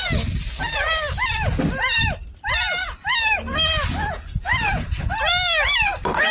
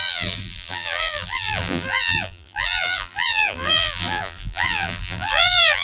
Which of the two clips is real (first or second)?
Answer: first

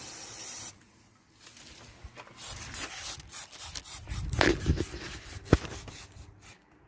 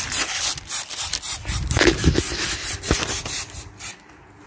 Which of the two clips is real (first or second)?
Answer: first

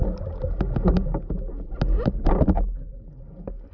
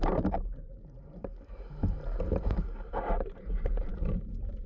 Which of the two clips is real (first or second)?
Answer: first